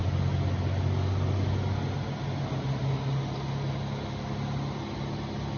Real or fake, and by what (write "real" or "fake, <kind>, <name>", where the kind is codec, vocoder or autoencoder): real